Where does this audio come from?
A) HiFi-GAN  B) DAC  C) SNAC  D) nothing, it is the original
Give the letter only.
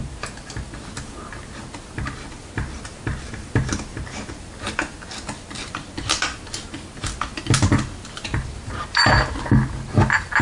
D